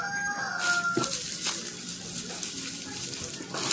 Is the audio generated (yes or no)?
no